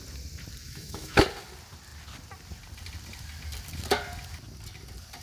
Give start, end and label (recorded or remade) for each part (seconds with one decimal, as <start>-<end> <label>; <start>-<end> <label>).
0.0-0.6 recorded; 0.6-1.2 remade; 1.2-5.2 recorded